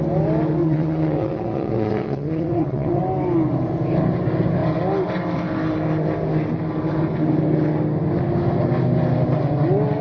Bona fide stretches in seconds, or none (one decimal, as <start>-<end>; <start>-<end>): 0.0-0.6; 3.0-10.0